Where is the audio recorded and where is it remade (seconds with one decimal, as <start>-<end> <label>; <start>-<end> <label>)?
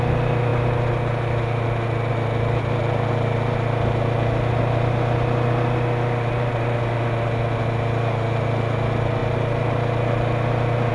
0.0-10.9 recorded